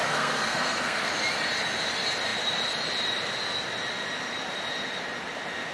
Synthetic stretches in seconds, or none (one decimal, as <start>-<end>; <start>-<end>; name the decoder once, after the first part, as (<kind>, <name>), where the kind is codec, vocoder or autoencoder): 0.0-1.1 (codec, SNAC)